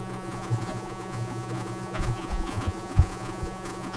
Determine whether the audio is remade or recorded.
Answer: remade